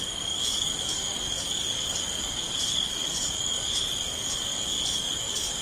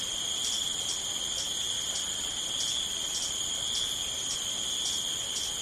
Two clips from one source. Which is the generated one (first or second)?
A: first